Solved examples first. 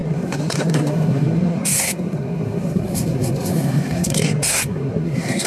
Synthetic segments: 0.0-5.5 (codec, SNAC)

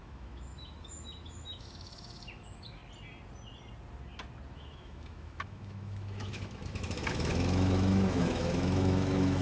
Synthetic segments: 0.0-2.8 (autoencoder, DAC-VAE); 4.5-9.4

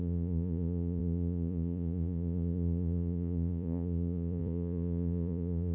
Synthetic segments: 0.0-5.7 (vocoder, Vocos)

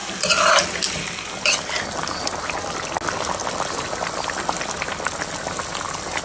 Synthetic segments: none

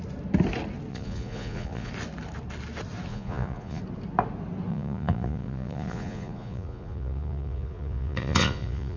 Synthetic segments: 0.9-1.9 (vocoder, Vocos); 3.1-3.8; 4.7-9.0

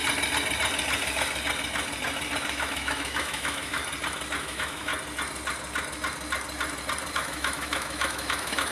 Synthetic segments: 2.5-3.8 (autoencoder, DAC-VAE); 4.4-4.9; 7.1-8.7